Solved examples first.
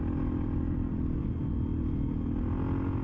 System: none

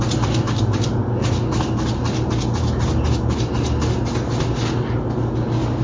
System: none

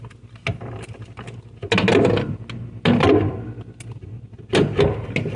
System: none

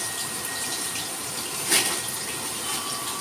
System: none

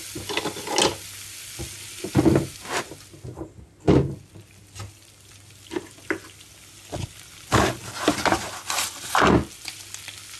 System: none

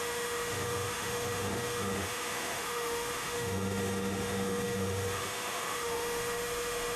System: autoencoder, DAC-VAE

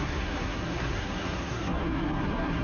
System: codec, SNAC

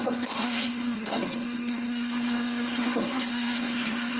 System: codec, SNAC